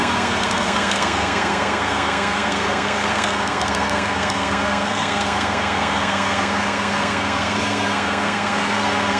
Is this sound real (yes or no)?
no